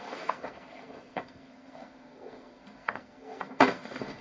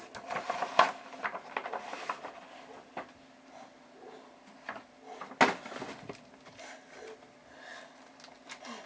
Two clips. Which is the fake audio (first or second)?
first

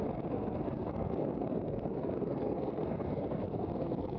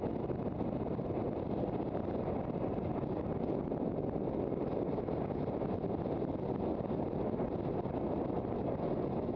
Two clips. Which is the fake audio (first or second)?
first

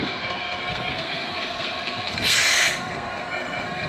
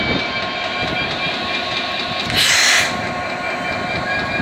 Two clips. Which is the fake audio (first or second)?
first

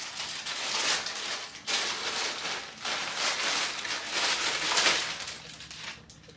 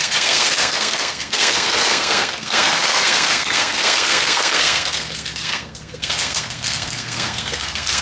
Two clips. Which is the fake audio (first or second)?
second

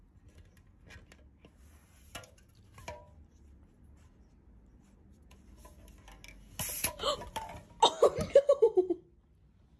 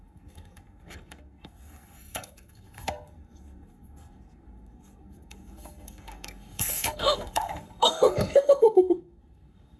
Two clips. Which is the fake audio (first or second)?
second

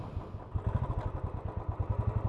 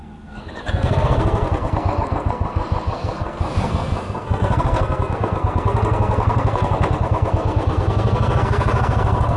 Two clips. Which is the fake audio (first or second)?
second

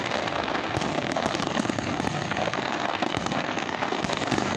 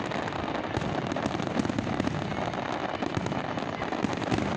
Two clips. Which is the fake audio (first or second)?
first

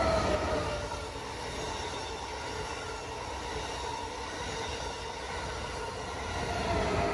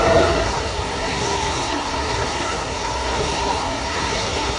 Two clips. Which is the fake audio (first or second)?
second